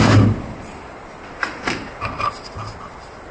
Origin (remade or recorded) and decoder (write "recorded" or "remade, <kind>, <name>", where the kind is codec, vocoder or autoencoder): recorded